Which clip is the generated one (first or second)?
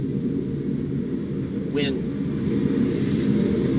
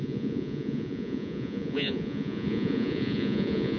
second